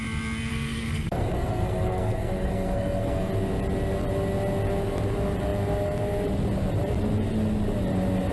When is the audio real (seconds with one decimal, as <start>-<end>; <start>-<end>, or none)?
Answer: 0.0-0.5; 3.3-8.3